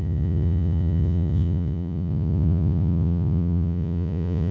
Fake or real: fake